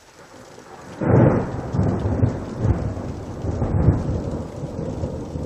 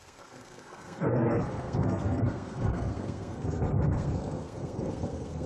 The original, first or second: first